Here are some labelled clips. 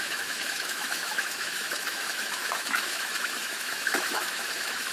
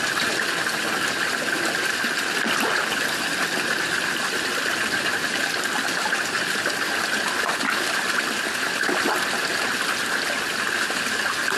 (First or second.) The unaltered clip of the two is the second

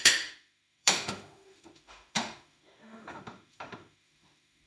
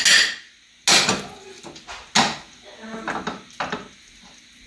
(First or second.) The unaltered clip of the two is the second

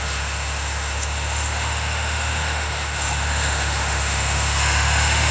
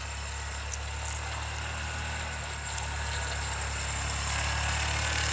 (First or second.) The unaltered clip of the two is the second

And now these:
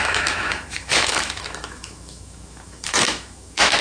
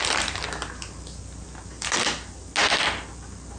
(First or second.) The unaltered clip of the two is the second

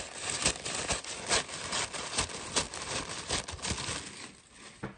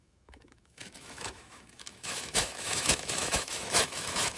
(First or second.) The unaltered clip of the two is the first